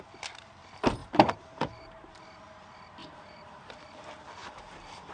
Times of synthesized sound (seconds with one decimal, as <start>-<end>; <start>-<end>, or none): 1.0-2.1; 3.0-3.7; 4.4-5.1